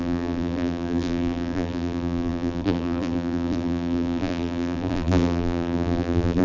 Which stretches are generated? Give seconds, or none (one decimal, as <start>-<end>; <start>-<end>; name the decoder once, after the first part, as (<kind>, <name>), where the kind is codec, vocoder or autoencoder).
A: 0.0-6.4 (vocoder, BigVGAN v2)